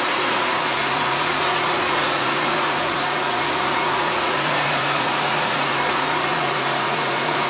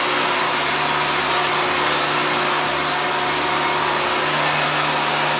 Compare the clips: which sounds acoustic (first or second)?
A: second